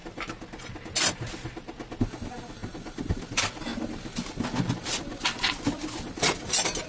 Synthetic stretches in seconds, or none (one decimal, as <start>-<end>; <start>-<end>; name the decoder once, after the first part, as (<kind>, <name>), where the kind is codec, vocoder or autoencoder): none